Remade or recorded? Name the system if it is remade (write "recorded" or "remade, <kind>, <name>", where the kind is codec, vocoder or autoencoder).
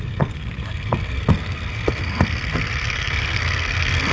remade, codec, SNAC